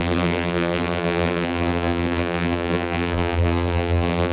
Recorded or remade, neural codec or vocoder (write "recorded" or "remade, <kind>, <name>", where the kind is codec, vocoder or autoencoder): remade, vocoder, BigVGAN v2